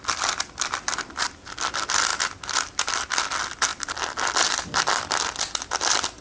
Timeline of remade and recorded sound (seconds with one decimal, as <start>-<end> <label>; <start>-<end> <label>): 0.0-6.2 recorded